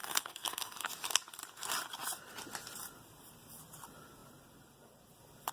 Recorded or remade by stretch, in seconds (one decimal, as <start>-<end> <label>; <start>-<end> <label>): 0.0-0.9 remade; 0.9-5.5 recorded